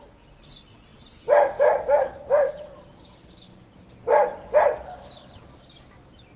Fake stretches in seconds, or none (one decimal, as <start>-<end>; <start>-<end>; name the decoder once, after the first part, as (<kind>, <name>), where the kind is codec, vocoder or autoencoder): none